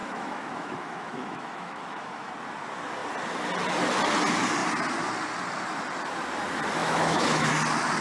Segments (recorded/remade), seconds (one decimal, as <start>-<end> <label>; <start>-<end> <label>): 0.0-2.3 remade; 2.3-6.8 recorded; 6.8-7.5 remade; 7.5-8.0 recorded